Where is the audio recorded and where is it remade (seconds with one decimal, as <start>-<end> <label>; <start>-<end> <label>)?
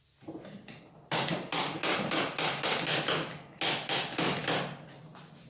0.0-5.5 recorded